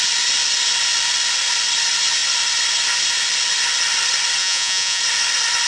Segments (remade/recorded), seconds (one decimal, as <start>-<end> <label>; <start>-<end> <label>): 0.0-4.4 recorded; 4.4-5.0 remade; 5.0-5.7 recorded